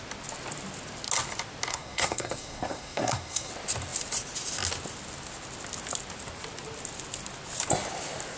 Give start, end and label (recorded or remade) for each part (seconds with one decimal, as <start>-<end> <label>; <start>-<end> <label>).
0.0-1.7 recorded; 1.7-3.5 remade; 3.5-8.4 recorded